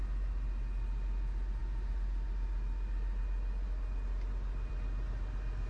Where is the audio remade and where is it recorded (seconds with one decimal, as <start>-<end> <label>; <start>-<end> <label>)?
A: 0.0-5.7 recorded